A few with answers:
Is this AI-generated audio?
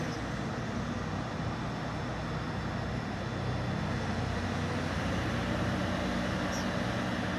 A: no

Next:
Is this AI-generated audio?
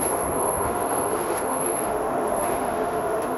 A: yes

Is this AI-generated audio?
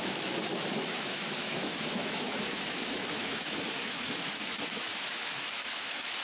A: yes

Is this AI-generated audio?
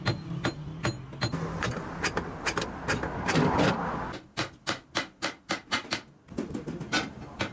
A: no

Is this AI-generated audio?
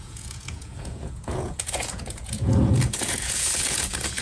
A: yes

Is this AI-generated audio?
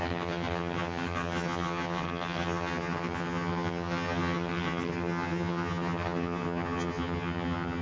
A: yes